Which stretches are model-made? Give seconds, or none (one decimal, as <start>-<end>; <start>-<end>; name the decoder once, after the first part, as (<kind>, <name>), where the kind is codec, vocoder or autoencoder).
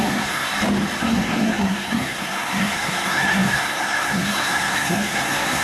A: 0.0-0.5 (codec, SNAC); 1.0-5.6